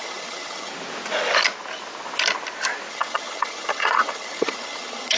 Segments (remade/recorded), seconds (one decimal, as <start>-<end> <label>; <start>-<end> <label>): 0.0-0.7 remade; 0.7-2.9 recorded; 2.9-5.2 remade